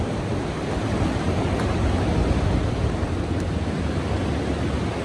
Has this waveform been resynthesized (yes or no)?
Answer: no